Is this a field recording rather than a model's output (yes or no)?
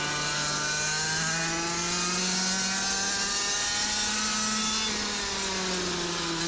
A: yes